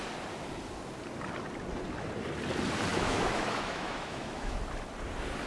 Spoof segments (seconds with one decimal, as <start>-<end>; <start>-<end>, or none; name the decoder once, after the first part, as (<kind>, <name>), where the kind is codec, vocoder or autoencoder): 2.9-4.6 (autoencoder, DAC-VAE)